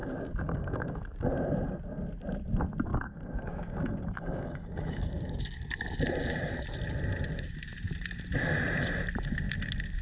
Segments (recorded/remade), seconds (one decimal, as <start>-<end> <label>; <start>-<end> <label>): 0.0-1.3 remade; 1.3-2.9 recorded; 2.9-5.4 remade; 5.4-10.0 recorded